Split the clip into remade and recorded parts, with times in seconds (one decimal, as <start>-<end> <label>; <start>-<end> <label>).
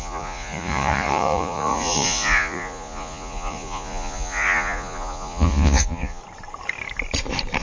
0.0-6.2 remade; 6.2-7.6 recorded